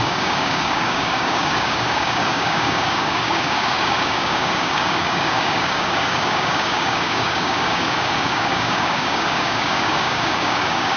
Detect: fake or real fake